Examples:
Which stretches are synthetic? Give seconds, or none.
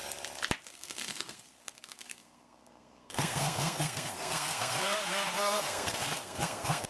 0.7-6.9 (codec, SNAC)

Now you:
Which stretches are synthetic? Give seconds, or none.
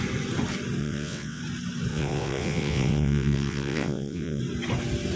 0.8-1.4 (vocoder, WaveNeXt); 1.9-4.4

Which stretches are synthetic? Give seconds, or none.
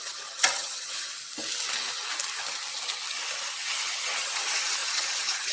0.0-1.1 (vocoder, HiFi-GAN); 3.4-5.5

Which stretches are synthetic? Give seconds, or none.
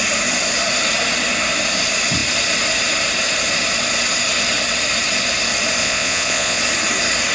5.8-6.6 (vocoder, Vocos)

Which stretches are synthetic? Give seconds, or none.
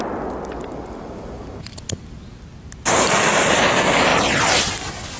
none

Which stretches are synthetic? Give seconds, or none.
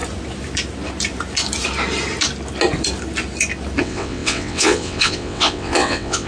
3.8-6.3 (vocoder, WaveNeXt)